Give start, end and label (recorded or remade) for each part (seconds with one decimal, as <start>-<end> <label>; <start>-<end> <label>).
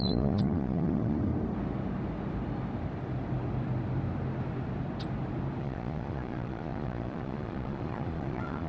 0.0-1.3 remade; 1.3-5.6 recorded; 5.6-8.7 remade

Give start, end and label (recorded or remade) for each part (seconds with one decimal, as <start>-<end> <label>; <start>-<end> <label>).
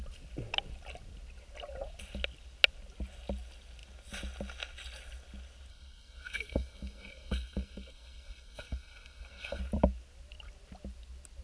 0.0-5.7 recorded; 5.7-9.6 remade; 9.6-11.4 recorded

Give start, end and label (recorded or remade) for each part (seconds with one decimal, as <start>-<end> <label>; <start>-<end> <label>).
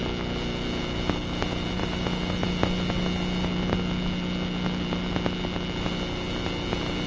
0.0-7.1 recorded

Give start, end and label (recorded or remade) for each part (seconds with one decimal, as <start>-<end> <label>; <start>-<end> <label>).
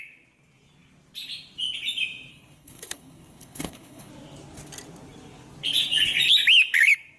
0.0-2.3 recorded; 2.3-4.1 remade; 4.1-7.2 recorded